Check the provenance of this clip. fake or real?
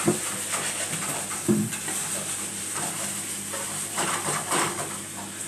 real